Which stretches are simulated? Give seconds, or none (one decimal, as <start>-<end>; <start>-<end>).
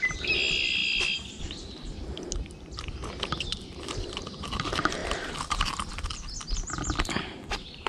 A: none